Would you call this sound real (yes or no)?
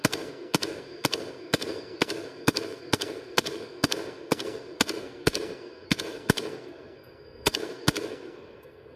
no